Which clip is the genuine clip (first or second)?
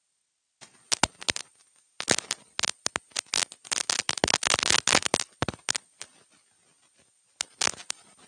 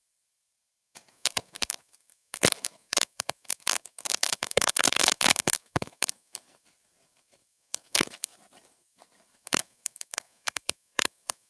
first